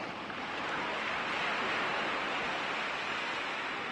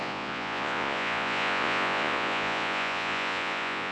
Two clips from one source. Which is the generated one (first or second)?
second